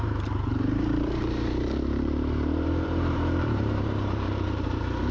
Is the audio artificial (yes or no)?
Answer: yes